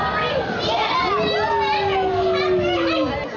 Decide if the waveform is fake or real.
real